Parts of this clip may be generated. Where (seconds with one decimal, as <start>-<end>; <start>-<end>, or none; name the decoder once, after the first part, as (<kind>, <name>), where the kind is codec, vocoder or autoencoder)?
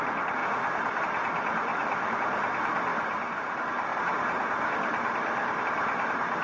1.7-2.2 (autoencoder, DAC-VAE)